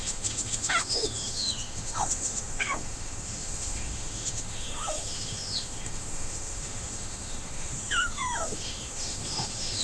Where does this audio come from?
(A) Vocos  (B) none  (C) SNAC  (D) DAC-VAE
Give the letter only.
D